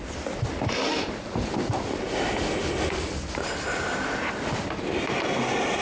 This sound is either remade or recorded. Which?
remade